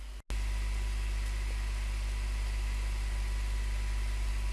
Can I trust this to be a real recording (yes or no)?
yes